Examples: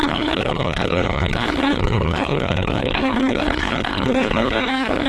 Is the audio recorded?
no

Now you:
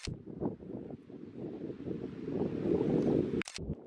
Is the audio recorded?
yes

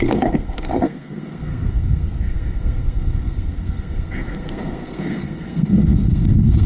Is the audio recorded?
no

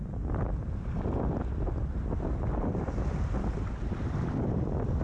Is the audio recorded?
yes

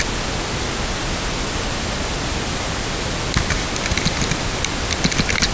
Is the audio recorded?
yes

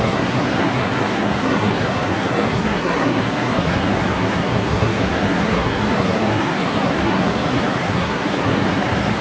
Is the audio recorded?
no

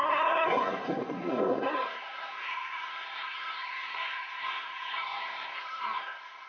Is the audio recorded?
no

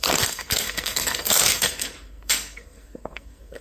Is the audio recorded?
no